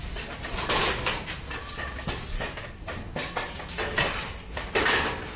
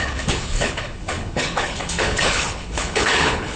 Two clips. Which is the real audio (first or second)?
first